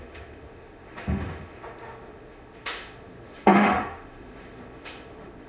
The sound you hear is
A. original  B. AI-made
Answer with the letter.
B